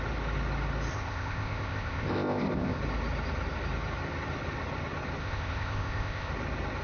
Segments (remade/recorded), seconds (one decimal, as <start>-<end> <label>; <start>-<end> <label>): 0.0-0.9 recorded; 0.9-2.8 remade; 2.8-5.2 recorded; 5.2-6.3 remade; 6.3-6.8 recorded